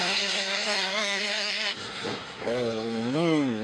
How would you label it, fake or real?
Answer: fake